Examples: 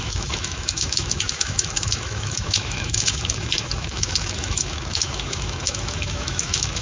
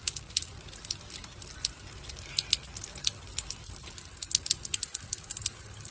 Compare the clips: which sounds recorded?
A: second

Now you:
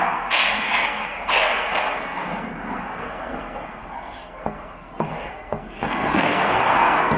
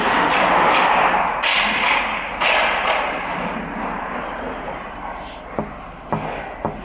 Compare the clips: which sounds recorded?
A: second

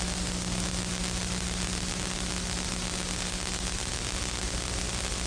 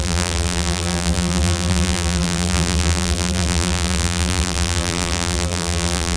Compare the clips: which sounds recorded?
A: first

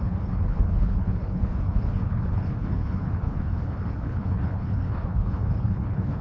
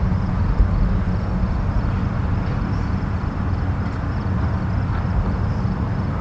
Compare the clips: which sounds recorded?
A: second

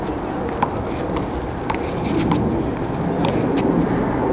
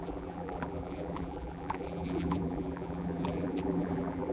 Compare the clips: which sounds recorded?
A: first